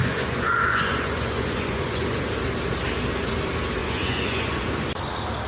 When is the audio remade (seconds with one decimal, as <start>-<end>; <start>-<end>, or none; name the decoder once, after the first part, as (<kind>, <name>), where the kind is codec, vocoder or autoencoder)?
0.0-2.2 (vocoder, Vocos); 3.8-4.6